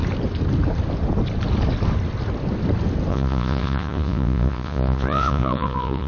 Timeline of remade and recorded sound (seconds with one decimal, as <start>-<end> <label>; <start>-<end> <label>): 0.0-3.1 recorded; 3.1-6.1 remade